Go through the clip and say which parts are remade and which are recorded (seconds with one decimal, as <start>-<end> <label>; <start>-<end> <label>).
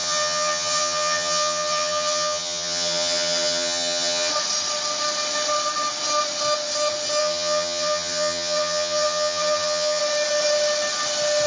0.0-4.3 remade; 4.3-7.2 recorded; 7.2-10.0 remade; 10.0-11.5 recorded